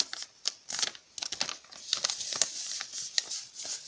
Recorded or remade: recorded